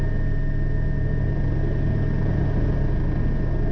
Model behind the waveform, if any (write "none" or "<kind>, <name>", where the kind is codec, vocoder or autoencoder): none